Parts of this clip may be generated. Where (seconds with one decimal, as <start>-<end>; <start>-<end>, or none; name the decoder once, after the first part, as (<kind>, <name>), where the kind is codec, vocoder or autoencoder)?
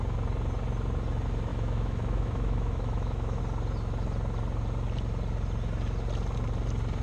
1.5-3.4 (autoencoder, DAC-VAE)